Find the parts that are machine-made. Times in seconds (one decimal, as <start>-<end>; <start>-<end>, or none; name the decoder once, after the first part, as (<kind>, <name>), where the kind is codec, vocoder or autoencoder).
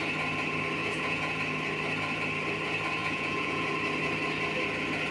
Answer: 0.8-1.4 (vocoder, Vocos); 3.0-3.7